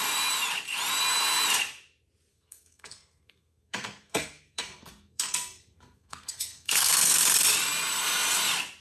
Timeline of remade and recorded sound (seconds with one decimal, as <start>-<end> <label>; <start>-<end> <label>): 0.0-2.3 recorded; 2.3-7.2 remade; 7.2-8.8 recorded